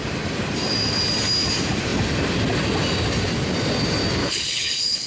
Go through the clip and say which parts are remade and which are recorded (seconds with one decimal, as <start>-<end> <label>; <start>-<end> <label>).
0.0-4.2 recorded; 4.2-5.1 remade